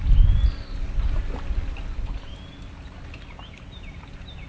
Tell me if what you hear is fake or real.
real